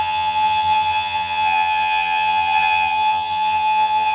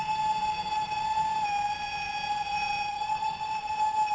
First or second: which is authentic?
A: second